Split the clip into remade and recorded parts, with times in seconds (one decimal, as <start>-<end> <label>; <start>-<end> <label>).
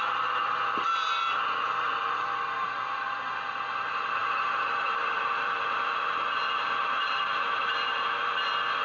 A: 0.0-2.6 recorded; 2.6-3.2 remade; 3.2-4.2 recorded; 4.2-8.4 remade; 8.4-8.8 recorded